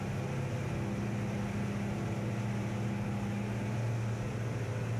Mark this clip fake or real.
real